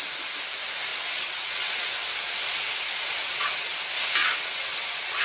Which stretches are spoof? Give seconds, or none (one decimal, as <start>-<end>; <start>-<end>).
0.9-1.9; 3.2-3.7; 4.2-5.2